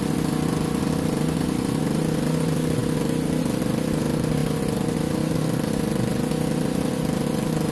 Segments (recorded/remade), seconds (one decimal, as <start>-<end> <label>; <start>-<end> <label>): 0.0-7.7 recorded